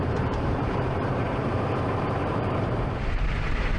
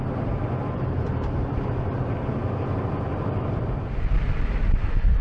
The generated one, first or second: first